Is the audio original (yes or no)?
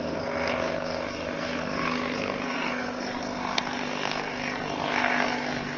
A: no